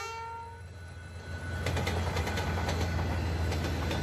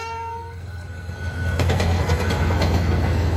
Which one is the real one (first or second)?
first